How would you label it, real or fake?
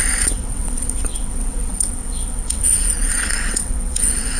fake